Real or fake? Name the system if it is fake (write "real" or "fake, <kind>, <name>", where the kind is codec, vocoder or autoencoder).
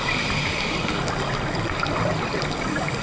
real